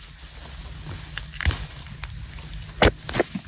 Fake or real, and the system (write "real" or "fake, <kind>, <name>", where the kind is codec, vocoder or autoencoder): real